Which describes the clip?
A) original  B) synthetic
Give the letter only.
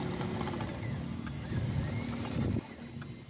A